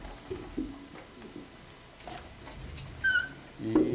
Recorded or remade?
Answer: recorded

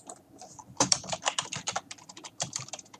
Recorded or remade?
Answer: remade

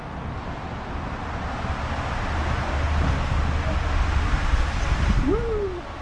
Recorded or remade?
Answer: recorded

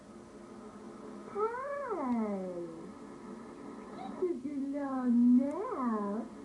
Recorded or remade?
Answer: recorded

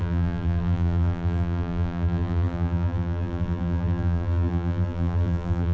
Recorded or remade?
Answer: remade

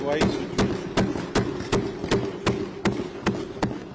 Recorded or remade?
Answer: recorded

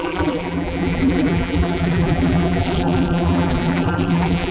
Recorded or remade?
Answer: remade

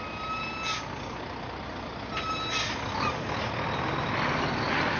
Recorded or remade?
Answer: recorded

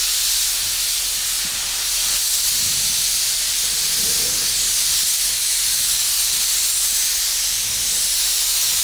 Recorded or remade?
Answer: recorded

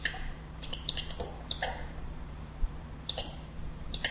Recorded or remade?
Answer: remade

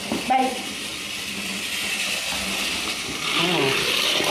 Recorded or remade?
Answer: recorded